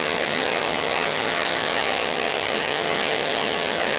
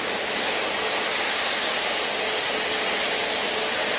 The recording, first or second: second